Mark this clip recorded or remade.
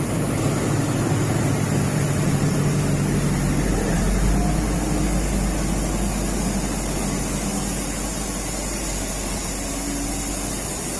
recorded